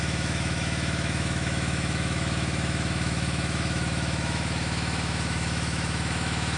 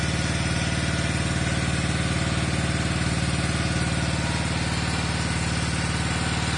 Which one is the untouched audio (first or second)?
second